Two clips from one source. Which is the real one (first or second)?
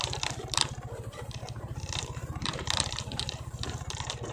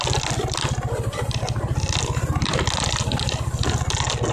second